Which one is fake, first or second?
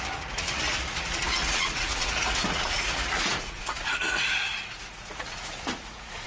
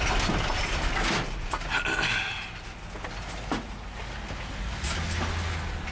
first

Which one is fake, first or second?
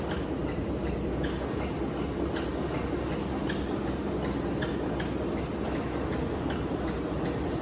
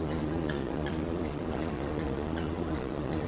second